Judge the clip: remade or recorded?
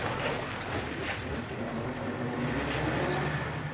recorded